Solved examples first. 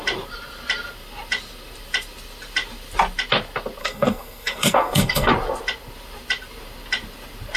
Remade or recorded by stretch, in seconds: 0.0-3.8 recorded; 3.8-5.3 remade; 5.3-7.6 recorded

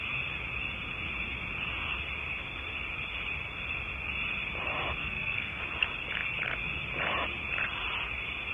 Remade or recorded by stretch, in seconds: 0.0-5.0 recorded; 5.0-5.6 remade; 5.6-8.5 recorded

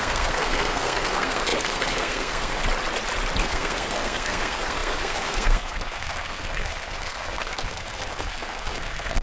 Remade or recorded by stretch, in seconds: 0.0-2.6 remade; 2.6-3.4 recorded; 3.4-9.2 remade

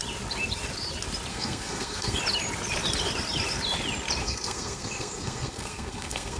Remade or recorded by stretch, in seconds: 0.0-1.3 recorded; 1.3-2.2 remade; 2.2-4.2 recorded; 4.2-6.4 remade